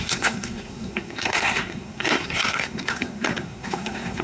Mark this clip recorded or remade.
remade